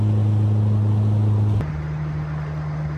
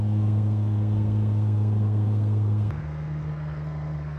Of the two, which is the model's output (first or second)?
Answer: second